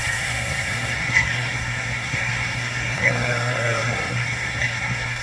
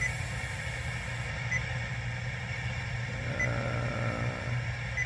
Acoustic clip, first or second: second